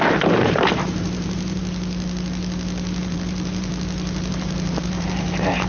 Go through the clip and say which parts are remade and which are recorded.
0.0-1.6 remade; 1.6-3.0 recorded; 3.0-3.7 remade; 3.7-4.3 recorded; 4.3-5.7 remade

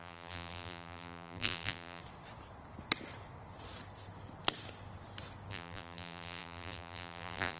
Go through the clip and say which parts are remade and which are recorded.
0.0-2.0 remade; 2.0-5.5 recorded; 5.5-7.6 remade

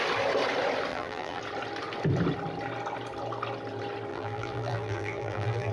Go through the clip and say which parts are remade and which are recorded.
0.0-0.9 recorded; 0.9-1.4 remade; 1.4-4.1 recorded; 4.1-5.7 remade

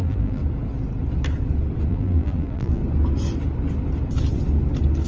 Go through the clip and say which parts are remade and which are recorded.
0.0-0.4 remade; 0.4-1.9 recorded; 1.9-2.8 remade; 2.8-5.1 recorded

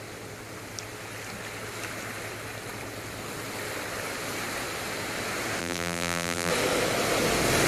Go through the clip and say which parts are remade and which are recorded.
0.0-5.6 recorded; 5.6-6.5 remade; 6.5-7.7 recorded

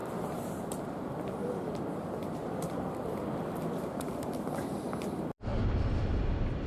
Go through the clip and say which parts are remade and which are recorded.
0.0-6.7 remade

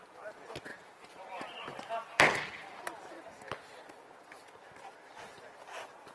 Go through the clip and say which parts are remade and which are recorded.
0.0-0.7 recorded; 0.7-3.2 remade; 3.2-6.1 recorded